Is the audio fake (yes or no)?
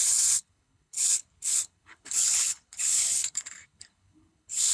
yes